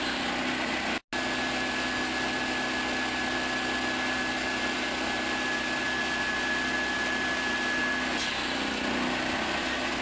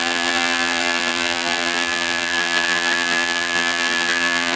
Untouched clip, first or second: first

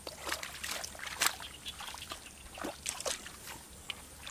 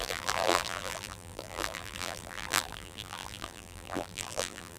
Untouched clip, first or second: first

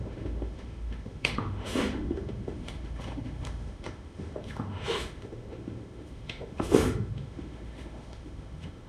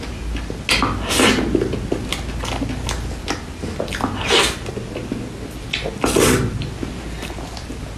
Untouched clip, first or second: second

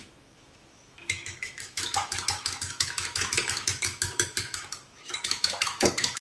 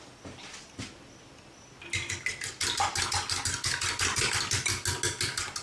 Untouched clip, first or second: second